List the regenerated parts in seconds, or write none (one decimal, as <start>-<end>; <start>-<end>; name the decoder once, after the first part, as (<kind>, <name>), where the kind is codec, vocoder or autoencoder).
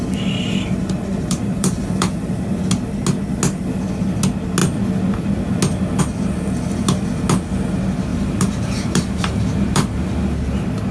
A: 1.1-2.3 (vocoder, BigVGAN v2); 8.1-10.1